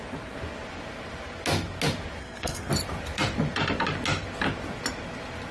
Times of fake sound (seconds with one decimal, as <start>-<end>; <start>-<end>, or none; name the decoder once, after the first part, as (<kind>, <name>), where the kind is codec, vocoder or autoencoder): 2.2-2.7 (codec, SNAC)